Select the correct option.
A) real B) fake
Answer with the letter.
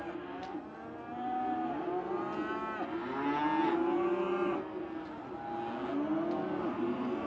A